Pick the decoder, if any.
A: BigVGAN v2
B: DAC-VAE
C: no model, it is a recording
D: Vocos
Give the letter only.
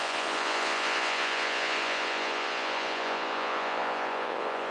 D